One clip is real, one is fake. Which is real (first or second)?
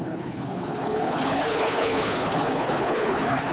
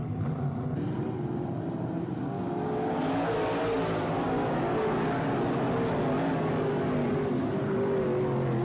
second